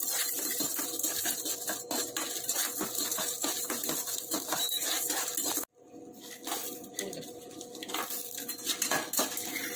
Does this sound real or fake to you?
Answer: real